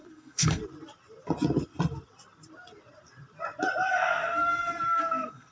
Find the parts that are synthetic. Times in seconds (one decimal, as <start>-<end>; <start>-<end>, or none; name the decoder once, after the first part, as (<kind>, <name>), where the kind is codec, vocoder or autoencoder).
0.0-0.6 (codec, SNAC); 3.9-5.5